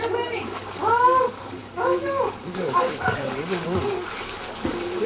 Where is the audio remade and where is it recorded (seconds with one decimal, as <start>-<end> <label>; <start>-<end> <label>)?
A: 0.0-5.1 remade